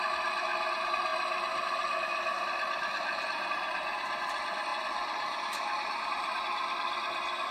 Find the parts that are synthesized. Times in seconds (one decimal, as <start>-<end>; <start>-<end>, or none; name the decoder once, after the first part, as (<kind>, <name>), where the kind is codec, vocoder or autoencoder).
4.7-6.4 (vocoder, BigVGAN v2)